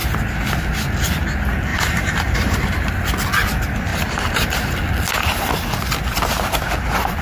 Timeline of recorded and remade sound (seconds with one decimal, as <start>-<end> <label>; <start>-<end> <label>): 0.0-1.7 recorded; 1.7-2.9 remade; 2.9-3.9 recorded; 3.9-4.8 remade; 4.8-7.2 recorded